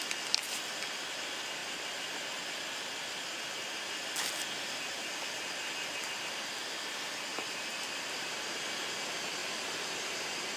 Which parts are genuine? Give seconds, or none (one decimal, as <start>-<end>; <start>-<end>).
0.0-7.3; 8.3-9.4

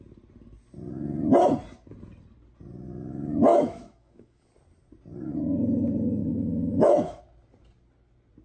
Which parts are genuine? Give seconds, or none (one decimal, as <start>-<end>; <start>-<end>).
0.0-3.5; 4.5-6.2; 7.2-8.4

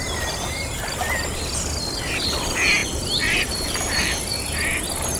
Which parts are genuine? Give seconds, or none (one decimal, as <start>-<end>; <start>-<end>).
0.0-2.8; 4.2-5.2

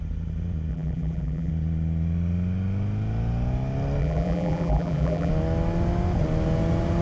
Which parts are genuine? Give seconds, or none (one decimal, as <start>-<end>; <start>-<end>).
0.0-0.7; 1.5-4.0; 5.3-7.0